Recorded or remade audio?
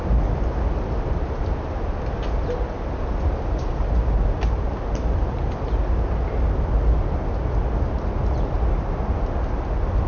recorded